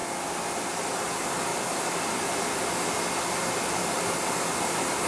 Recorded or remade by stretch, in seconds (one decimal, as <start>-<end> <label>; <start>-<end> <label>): 0.0-3.8 recorded; 3.8-5.1 remade